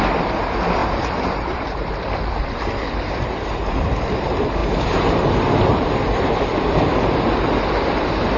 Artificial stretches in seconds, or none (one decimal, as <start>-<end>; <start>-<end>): 0.8-1.9; 4.6-5.3